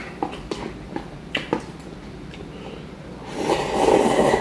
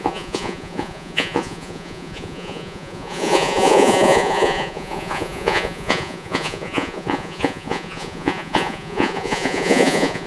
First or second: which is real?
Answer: first